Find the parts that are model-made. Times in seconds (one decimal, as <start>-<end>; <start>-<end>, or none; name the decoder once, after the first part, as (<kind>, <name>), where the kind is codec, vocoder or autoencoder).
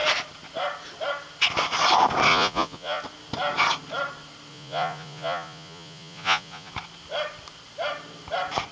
2.3-3.0 (vocoder, Vocos); 4.5-6.7